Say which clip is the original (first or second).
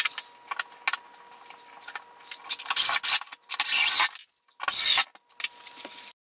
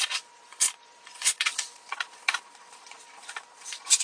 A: first